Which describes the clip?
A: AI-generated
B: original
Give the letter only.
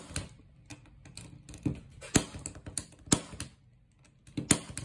B